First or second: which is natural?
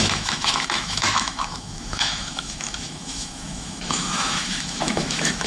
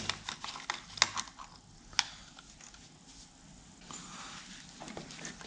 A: second